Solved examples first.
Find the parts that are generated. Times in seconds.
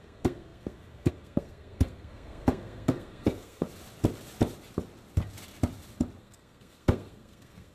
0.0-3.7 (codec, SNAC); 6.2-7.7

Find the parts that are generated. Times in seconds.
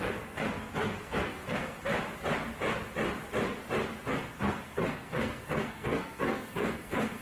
0.0-1.9 (codec, SNAC); 4.1-7.2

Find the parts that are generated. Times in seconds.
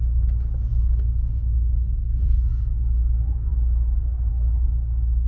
none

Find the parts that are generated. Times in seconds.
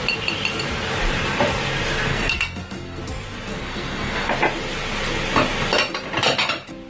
2.1-3.0 (codec, SNAC); 3.5-4.3